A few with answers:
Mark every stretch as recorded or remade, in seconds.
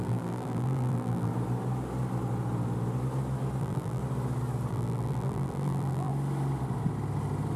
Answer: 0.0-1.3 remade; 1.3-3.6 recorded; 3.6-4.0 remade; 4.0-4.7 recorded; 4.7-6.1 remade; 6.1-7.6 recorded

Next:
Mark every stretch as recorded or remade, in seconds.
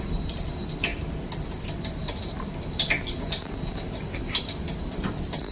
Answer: 0.0-5.5 recorded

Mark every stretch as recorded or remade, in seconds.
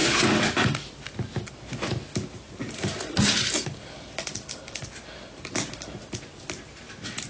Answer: 0.0-3.5 recorded; 3.5-5.0 remade; 5.0-6.3 recorded; 6.3-7.3 remade